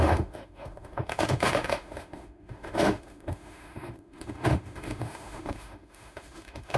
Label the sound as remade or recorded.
remade